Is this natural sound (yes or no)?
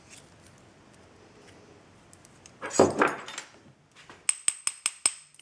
yes